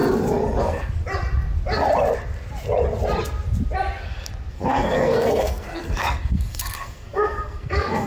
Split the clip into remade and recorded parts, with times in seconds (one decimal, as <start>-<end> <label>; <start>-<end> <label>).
0.0-0.6 recorded; 0.6-1.0 remade; 1.0-4.5 recorded; 4.5-8.1 remade

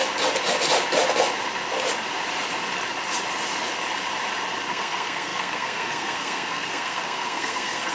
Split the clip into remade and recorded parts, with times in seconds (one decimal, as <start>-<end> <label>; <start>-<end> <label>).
0.0-4.7 recorded; 4.7-7.9 remade

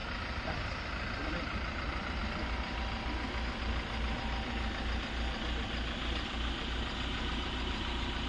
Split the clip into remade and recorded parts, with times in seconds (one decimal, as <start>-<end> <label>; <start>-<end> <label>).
0.0-8.3 recorded

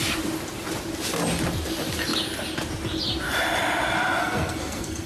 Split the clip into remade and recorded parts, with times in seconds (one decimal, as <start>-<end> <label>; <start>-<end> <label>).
0.0-4.2 recorded; 4.2-5.1 remade